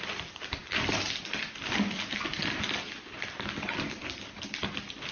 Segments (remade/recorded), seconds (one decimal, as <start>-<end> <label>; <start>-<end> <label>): 0.0-5.1 recorded